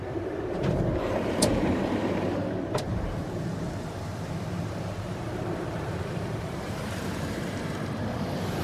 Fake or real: fake